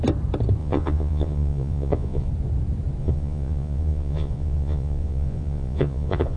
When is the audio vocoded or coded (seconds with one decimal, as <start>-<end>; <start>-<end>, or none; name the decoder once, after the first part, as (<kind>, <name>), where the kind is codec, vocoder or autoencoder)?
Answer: 0.6-2.3 (vocoder, Vocos); 3.0-6.4